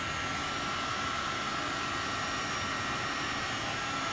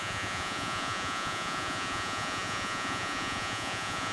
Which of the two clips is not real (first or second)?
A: second